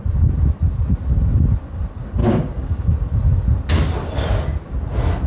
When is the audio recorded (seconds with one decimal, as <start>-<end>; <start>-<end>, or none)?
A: 0.0-2.2; 2.9-5.3